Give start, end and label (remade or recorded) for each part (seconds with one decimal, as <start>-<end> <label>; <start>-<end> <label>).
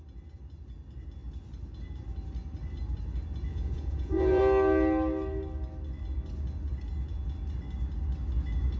0.0-3.5 recorded; 3.5-4.4 remade; 4.4-8.8 recorded